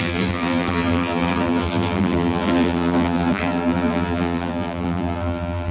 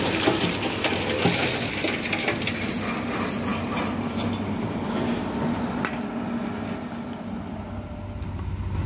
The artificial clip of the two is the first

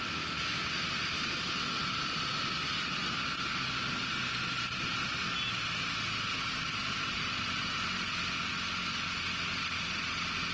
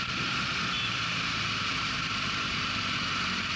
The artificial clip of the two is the second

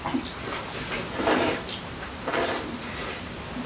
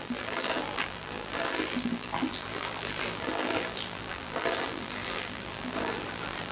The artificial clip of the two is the second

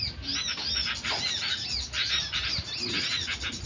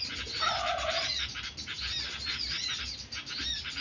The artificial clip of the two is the second